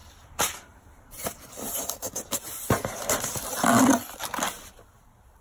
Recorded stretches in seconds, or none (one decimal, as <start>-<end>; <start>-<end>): 3.2-5.4